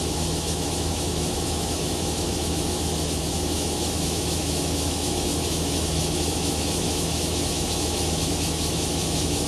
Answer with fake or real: fake